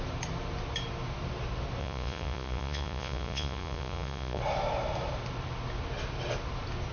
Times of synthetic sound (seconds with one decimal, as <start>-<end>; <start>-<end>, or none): 1.8-4.4